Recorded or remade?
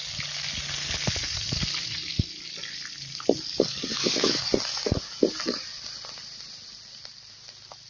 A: recorded